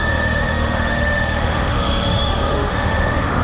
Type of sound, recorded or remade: remade